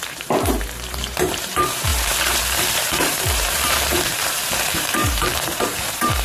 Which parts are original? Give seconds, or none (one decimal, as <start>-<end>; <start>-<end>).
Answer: none